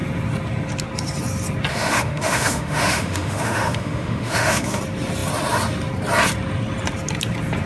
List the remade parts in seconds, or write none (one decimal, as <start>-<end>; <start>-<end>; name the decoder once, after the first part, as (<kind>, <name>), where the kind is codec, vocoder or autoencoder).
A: 1.7-4.8 (autoencoder, DAC-VAE)